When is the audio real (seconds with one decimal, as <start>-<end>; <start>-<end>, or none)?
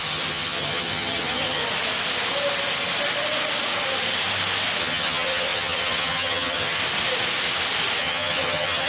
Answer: 1.6-4.8; 6.8-8.0